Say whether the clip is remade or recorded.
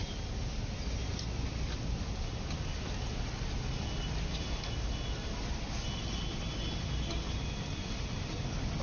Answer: recorded